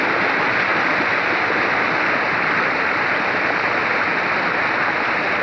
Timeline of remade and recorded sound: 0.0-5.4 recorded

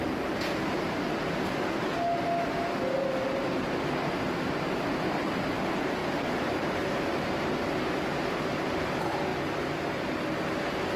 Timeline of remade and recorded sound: 0.0-6.0 recorded; 6.0-6.8 remade; 6.8-11.0 recorded

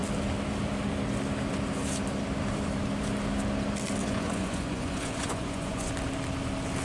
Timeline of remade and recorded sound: 0.0-4.0 recorded; 4.0-5.9 remade; 5.9-6.8 recorded

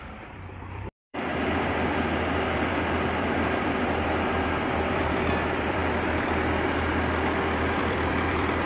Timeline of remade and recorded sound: 0.0-5.8 remade; 5.8-7.8 recorded; 7.8-8.7 remade

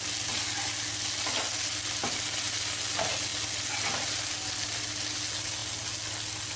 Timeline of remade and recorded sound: 0.0-6.6 recorded

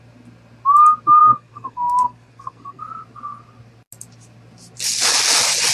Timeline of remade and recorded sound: 0.0-1.2 recorded; 1.2-2.8 remade; 2.8-5.7 recorded

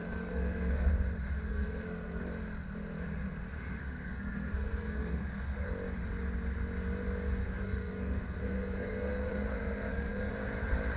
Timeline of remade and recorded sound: 0.0-0.9 remade; 0.9-1.5 recorded; 1.5-2.2 remade; 2.2-3.8 recorded; 3.8-5.7 remade; 5.7-7.4 recorded; 7.4-10.3 remade; 10.3-11.0 recorded